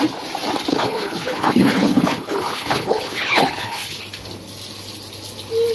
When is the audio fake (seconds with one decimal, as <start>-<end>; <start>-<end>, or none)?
0.7-4.0